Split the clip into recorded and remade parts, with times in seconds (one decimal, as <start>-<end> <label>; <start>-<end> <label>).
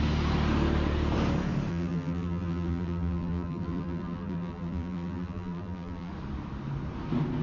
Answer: 0.0-1.7 recorded; 1.7-6.1 remade; 6.1-7.4 recorded